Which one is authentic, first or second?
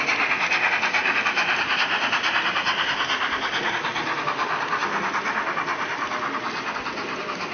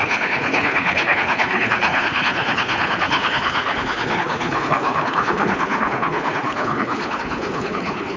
first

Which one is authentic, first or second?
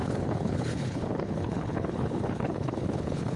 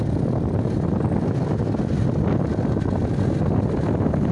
second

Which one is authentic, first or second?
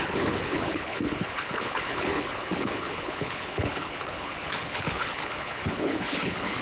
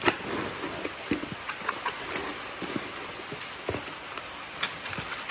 second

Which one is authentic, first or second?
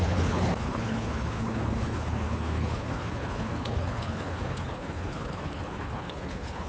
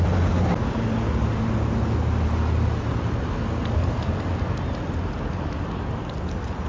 second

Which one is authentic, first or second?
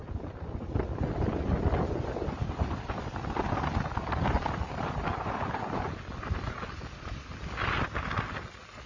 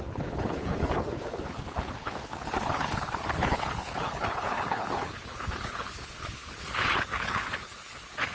first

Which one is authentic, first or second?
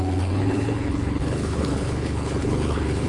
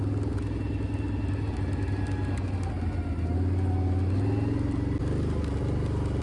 second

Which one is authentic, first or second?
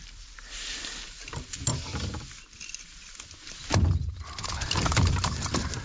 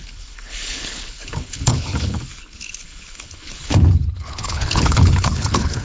first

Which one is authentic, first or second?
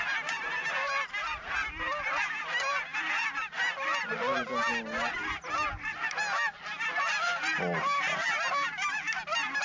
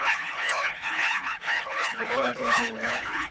first